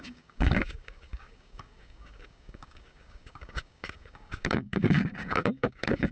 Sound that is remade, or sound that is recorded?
remade